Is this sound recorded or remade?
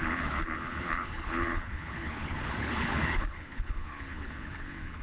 remade